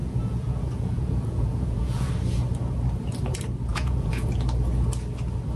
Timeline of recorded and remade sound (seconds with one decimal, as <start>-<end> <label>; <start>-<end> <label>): 0.0-2.1 remade; 2.1-3.7 recorded; 3.7-4.3 remade; 4.3-5.6 recorded